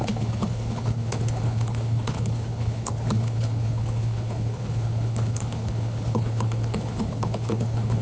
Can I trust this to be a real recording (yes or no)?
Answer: no